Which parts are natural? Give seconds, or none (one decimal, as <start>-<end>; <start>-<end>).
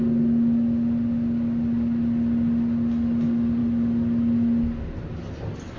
0.0-5.8